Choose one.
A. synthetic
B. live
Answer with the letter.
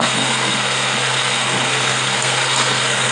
A